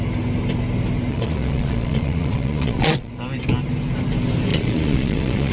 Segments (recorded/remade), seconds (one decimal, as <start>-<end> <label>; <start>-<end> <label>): 0.0-1.1 recorded; 1.1-3.1 remade; 3.1-4.5 recorded; 4.5-5.5 remade